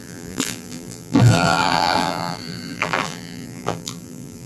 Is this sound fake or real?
fake